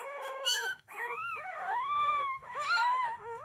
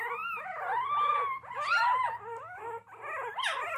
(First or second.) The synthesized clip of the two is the first